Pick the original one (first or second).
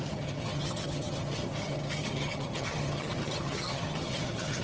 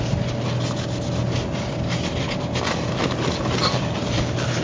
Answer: second